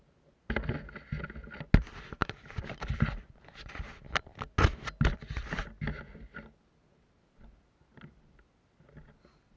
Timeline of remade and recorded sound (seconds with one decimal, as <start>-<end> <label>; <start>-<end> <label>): 0.0-2.2 recorded; 2.2-2.8 remade; 2.8-9.6 recorded